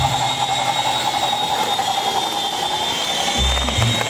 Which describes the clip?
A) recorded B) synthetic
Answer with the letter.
B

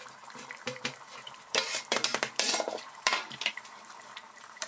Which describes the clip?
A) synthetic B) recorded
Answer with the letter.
A